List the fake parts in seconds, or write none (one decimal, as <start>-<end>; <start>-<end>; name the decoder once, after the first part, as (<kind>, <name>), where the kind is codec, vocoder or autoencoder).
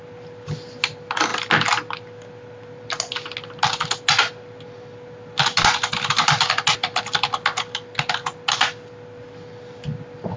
none